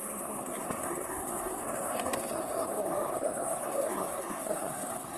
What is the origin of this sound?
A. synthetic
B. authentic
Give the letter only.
A